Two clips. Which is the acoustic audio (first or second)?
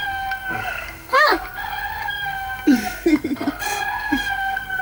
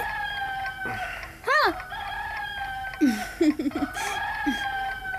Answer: second